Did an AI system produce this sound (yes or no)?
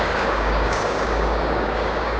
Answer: yes